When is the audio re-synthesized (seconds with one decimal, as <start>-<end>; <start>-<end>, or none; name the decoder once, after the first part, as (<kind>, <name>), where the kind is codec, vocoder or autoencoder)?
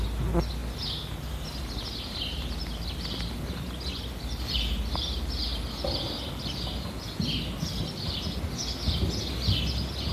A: none